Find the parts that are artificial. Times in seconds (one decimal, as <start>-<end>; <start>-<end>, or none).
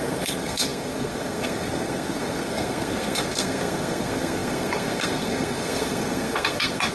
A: 0.0-6.9